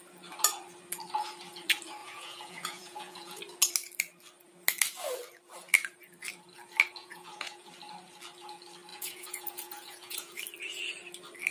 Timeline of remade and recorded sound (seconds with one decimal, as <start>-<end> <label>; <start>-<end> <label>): 0.0-2.0 recorded; 2.0-3.4 remade; 3.4-7.0 recorded; 7.0-7.7 remade; 7.7-8.9 recorded; 8.9-10.4 remade; 10.4-11.5 recorded